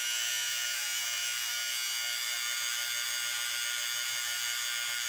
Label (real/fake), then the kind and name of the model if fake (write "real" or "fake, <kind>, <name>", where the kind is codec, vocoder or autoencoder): fake, autoencoder, DAC-VAE